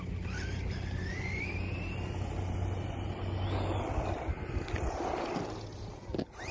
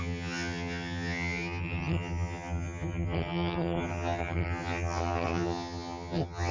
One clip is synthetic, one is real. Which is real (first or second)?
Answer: first